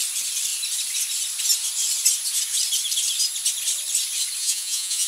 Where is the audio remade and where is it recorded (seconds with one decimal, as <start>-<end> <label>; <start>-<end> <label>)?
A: 0.0-4.4 recorded; 4.4-5.1 remade